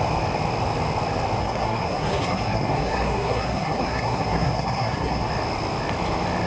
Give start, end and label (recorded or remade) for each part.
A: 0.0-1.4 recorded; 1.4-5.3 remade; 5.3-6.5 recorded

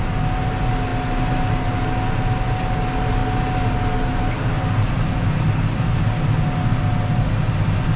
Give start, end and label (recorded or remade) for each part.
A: 0.0-8.0 recorded

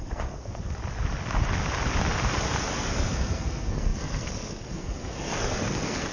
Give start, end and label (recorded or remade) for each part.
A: 0.0-0.8 remade; 0.8-2.8 recorded; 2.8-6.1 remade

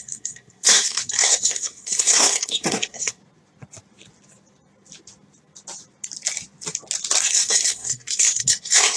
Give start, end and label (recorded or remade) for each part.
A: 0.0-3.2 remade; 3.2-7.2 recorded; 7.2-9.0 remade